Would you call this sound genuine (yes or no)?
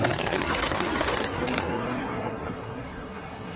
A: no